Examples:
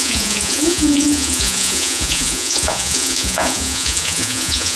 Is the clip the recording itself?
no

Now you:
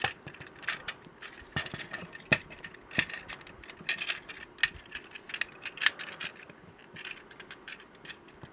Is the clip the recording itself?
yes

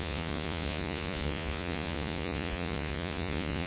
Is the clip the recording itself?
no